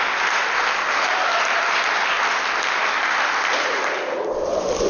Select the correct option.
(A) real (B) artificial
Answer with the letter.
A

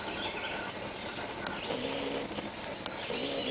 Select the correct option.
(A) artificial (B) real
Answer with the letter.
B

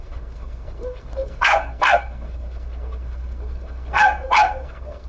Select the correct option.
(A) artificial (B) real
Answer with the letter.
A